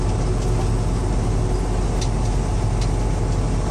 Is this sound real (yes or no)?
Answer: yes